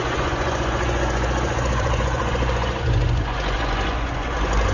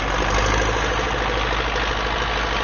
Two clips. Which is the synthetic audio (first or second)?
first